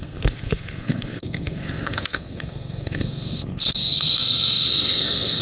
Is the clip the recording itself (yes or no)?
no